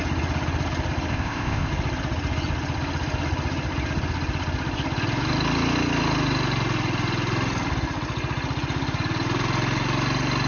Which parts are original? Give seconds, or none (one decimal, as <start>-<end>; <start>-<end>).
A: 0.0-1.1; 1.7-10.5